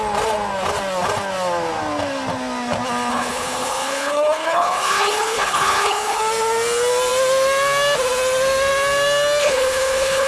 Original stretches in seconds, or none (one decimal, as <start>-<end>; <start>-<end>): 0.0-3.1; 6.2-9.4